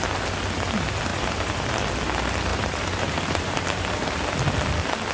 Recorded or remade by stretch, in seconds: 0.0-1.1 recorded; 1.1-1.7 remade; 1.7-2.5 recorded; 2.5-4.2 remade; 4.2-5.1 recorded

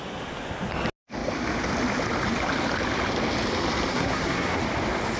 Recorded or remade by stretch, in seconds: 0.0-3.9 recorded; 3.9-4.6 remade; 4.6-5.2 recorded

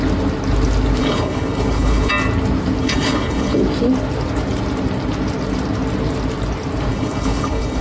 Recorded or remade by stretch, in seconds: 0.0-1.0 recorded; 1.0-2.1 remade; 2.1-2.8 recorded; 2.8-3.6 remade; 3.6-6.9 recorded; 6.9-7.8 remade